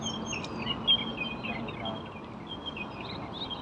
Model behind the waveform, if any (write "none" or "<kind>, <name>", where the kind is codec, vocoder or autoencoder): none